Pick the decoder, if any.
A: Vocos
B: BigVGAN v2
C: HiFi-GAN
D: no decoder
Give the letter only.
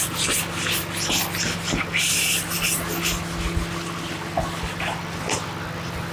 D